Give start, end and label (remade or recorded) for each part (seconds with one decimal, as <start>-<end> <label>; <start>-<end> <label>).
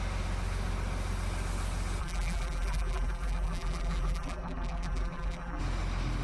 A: 0.0-2.0 recorded; 2.0-5.6 remade; 5.6-6.2 recorded